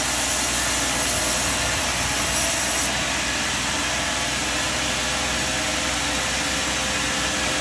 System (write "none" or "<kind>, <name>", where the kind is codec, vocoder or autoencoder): none